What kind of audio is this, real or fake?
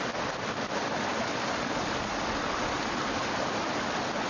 real